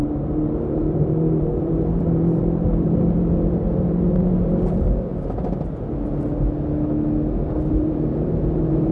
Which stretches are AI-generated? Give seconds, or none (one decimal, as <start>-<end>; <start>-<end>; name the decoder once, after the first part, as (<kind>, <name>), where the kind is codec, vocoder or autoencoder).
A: 0.0-5.1 (vocoder, BigVGAN v2); 7.7-8.9